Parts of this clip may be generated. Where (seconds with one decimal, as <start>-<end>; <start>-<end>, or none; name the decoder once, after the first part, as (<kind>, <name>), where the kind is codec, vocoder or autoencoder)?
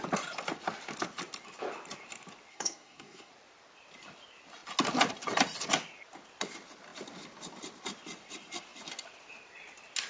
2.5-3.3 (codec, SNAC)